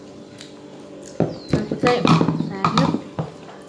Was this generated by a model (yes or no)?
no